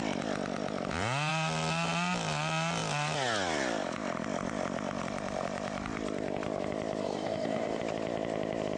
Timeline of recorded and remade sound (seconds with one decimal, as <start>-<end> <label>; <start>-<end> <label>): 0.0-7.0 recorded; 7.0-7.8 remade; 7.8-8.8 recorded